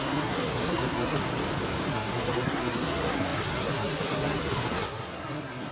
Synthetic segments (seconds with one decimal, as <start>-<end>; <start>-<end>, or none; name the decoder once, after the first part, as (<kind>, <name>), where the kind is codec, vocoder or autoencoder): 0.0-1.2 (codec, SNAC); 1.9-5.7